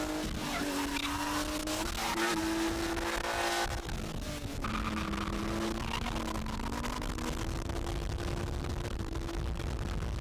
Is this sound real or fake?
real